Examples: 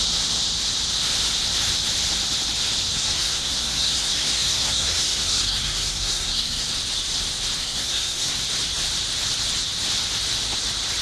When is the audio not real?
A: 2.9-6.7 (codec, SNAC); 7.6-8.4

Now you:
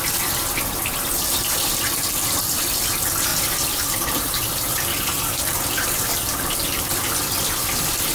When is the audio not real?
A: 3.3-7.1 (vocoder, BigVGAN v2)

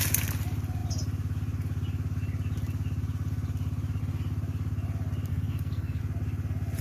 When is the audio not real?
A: 5.3-6.0 (codec, SNAC)

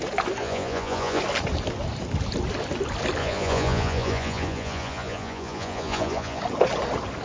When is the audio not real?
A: 0.4-1.2 (vocoder, Vocos); 3.2-6.4

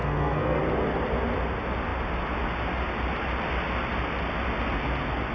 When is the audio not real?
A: 0.0-0.6 (codec, SNAC)

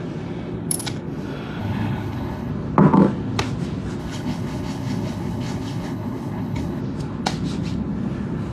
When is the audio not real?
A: 1.6-2.5 (codec, HILCodec); 4.0-6.8

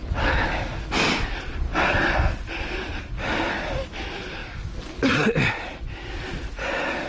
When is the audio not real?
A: none

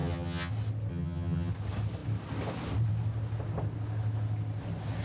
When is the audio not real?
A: 0.0-0.5 (vocoder, HiFi-GAN); 0.9-1.5